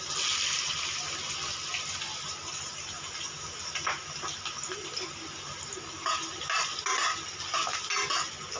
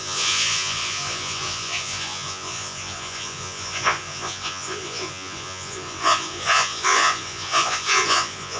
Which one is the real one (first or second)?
first